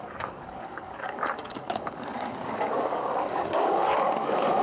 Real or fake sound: fake